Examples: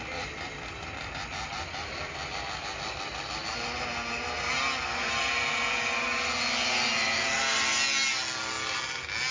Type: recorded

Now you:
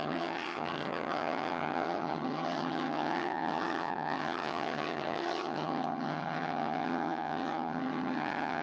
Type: remade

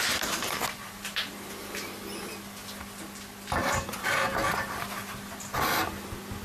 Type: recorded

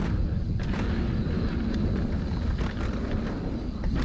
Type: recorded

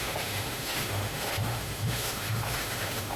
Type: remade